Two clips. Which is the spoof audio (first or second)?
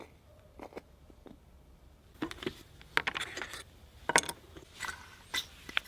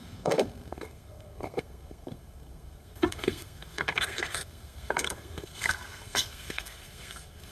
second